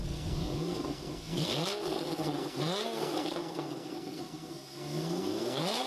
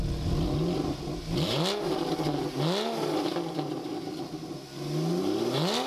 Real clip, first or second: second